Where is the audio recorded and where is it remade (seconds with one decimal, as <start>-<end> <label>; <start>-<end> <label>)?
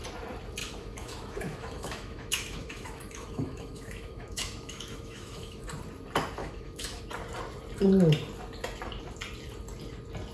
0.0-0.6 recorded; 0.6-5.6 remade; 5.6-6.4 recorded; 6.4-7.0 remade; 7.0-10.3 recorded